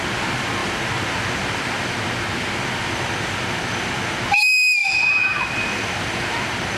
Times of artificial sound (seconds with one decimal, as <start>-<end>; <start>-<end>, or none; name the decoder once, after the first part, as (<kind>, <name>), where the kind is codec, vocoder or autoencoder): 0.0-0.6 (vocoder, BigVGAN v2); 4.3-6.8